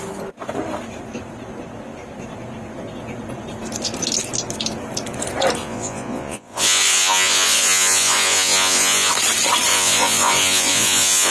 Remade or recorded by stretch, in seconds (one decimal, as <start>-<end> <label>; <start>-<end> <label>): 0.0-5.6 recorded; 5.6-9.1 remade; 9.1-9.7 recorded; 9.7-11.3 remade

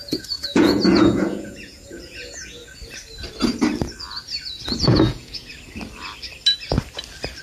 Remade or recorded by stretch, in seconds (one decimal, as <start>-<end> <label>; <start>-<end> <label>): 0.0-2.6 remade; 2.6-4.8 recorded; 4.8-5.5 remade; 5.5-7.4 recorded

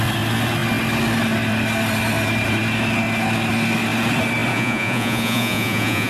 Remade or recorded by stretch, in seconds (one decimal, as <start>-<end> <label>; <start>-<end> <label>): 0.0-4.5 recorded; 4.5-6.1 remade

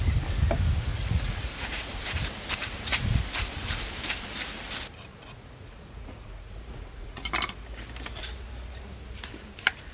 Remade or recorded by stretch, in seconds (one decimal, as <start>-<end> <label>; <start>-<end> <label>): 0.0-0.9 recorded; 0.9-1.9 remade; 1.9-2.6 recorded; 2.6-3.2 remade; 3.2-5.1 recorded; 5.1-7.3 remade; 7.3-9.9 recorded

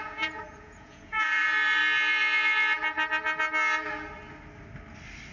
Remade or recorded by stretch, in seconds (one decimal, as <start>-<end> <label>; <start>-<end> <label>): 0.0-1.8 remade; 1.8-5.3 recorded

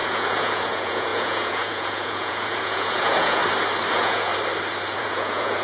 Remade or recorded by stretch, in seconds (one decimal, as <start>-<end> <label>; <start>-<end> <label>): 0.0-3.4 remade; 3.4-3.9 recorded; 3.9-4.3 remade; 4.3-5.0 recorded; 5.0-5.6 remade

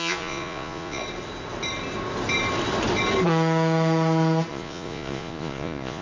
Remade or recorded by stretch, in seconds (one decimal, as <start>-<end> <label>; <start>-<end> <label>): 0.0-1.0 remade; 1.0-4.5 recorded; 4.5-6.0 remade

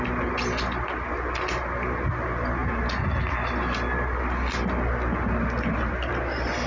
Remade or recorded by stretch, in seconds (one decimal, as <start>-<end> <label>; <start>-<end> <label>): 0.0-6.7 recorded